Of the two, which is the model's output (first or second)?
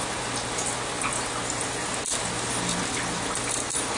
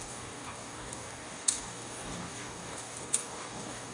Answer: second